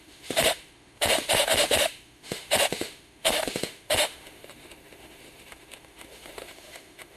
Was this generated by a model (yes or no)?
yes